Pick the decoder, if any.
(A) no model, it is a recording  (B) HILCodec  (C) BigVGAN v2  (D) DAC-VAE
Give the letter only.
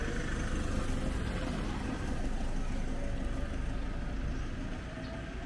A